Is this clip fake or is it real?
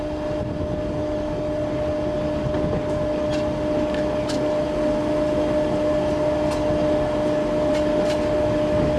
real